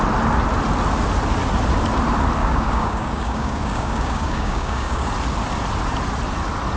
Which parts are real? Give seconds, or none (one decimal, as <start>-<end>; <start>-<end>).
0.0-2.4; 5.1-6.8